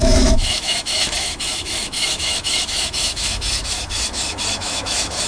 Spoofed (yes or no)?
yes